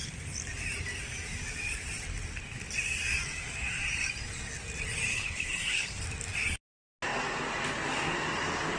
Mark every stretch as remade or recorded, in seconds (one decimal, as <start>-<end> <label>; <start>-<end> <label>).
0.0-5.1 recorded; 5.1-6.0 remade; 6.0-8.8 recorded